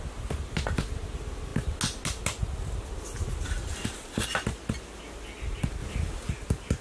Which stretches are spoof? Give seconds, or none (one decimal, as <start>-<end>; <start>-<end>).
none